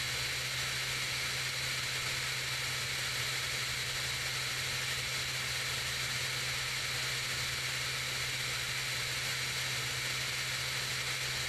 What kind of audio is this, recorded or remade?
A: recorded